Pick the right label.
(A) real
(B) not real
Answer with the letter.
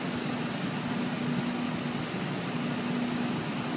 A